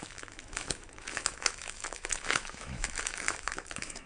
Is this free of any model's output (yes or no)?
no